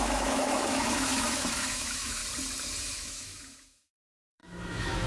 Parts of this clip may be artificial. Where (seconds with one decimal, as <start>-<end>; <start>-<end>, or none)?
0.0-2.2; 2.8-5.1